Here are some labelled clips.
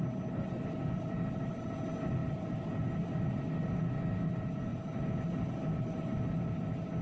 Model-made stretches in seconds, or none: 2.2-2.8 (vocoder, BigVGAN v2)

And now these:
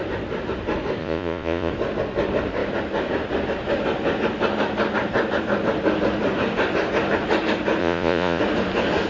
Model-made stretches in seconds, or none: 1.0-1.7 (vocoder, Vocos); 7.8-8.4

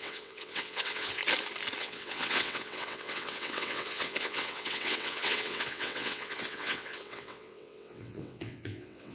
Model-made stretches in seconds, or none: 0.0-1.2 (vocoder, WaveNeXt); 1.8-9.1

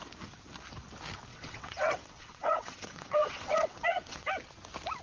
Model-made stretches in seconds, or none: 1.3-4.3 (vocoder, WaveNeXt)

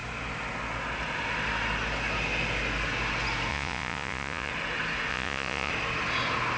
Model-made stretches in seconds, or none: 3.5-4.5 (vocoder, Vocos); 5.1-5.7